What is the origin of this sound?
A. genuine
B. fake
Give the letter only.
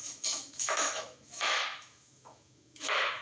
B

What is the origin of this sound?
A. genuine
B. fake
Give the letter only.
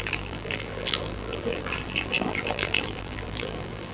B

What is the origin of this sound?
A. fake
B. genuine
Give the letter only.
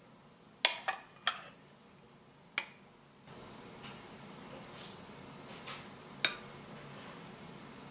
B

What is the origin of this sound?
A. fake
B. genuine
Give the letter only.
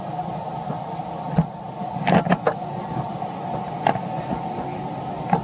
B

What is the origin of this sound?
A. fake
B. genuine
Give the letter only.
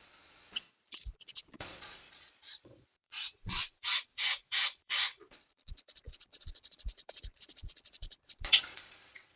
A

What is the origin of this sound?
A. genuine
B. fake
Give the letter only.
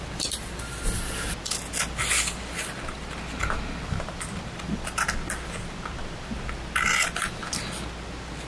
A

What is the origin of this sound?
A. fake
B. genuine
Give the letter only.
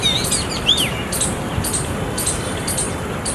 B